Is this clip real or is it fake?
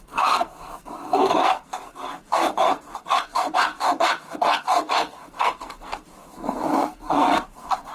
fake